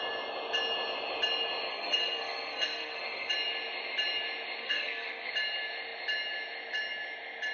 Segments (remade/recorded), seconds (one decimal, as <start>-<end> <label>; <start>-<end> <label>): 0.0-1.7 recorded; 1.7-3.3 remade; 3.3-4.6 recorded; 4.6-5.3 remade; 5.3-7.5 recorded